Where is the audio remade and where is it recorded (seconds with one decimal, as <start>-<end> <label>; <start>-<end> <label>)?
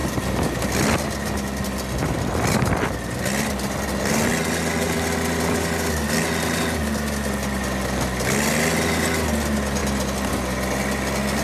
0.0-11.4 recorded